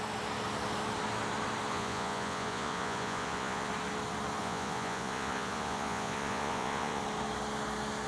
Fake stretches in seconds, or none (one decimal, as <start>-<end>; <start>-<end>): 1.7-3.7; 4.4-7.0